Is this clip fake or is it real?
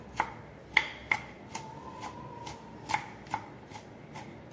real